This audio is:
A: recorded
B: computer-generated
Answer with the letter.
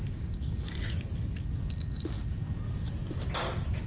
A